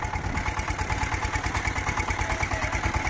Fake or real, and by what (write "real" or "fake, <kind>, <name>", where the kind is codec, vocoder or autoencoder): real